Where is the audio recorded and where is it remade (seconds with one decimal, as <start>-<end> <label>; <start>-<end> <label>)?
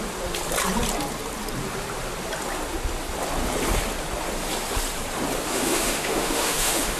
0.0-5.5 recorded; 5.5-7.0 remade